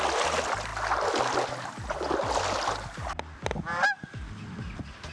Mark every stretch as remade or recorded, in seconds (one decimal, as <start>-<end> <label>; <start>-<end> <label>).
0.0-5.1 recorded